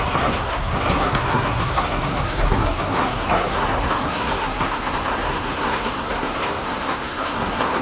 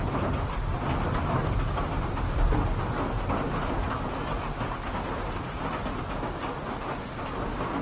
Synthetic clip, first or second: first